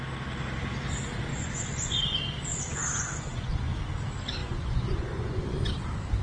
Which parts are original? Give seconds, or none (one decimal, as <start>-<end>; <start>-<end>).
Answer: 0.0-1.3; 2.0-2.5; 3.7-4.4; 5.7-6.2